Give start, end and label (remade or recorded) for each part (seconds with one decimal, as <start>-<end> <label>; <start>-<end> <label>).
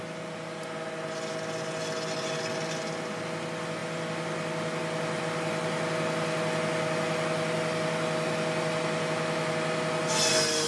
0.0-10.7 recorded